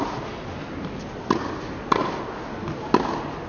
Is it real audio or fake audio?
real